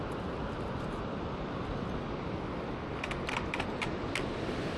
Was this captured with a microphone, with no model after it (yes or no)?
yes